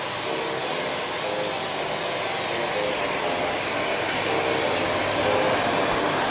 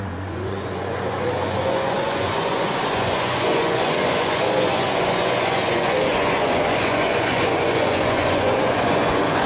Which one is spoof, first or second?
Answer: second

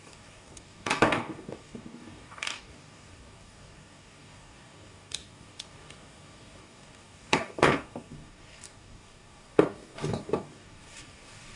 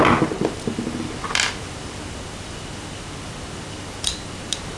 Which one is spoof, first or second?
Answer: first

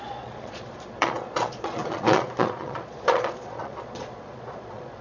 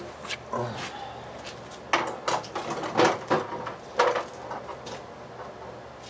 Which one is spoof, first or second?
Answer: first